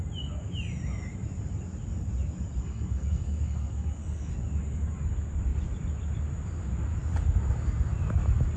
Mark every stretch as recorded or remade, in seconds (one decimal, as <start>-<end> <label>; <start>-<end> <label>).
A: 0.0-2.6 recorded; 2.6-4.3 remade; 4.3-8.6 recorded